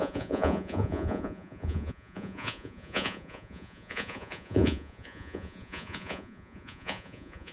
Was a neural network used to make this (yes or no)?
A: yes